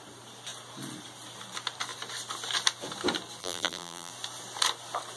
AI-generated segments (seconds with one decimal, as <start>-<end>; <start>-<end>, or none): 3.4-4.1